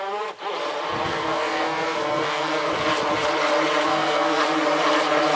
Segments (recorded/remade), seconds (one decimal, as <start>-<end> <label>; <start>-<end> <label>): 0.0-1.1 recorded; 1.1-2.7 remade; 2.7-3.9 recorded; 3.9-4.4 remade; 4.4-5.4 recorded